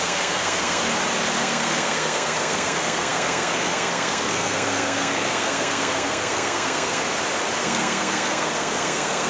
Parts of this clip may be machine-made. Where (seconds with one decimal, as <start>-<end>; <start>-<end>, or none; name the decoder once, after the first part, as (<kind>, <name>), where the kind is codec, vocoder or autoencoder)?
0.0-0.8 (codec, SNAC); 1.4-7.0; 7.6-9.3

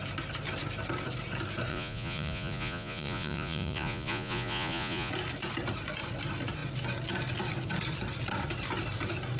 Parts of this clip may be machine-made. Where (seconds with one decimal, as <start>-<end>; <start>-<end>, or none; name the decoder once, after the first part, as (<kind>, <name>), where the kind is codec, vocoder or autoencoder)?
1.7-5.1 (vocoder, Vocos)